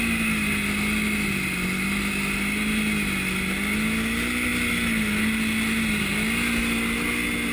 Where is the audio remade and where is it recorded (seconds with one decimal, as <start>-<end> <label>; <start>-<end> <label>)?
0.0-7.5 recorded